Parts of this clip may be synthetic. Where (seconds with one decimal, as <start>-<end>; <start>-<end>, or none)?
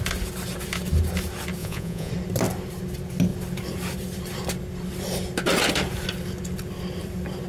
1.6-2.1